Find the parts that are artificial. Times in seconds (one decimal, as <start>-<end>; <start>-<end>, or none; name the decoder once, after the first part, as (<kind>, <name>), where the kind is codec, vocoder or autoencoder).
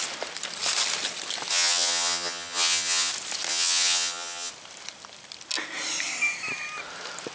1.5-3.1 (vocoder, HiFi-GAN); 3.5-4.5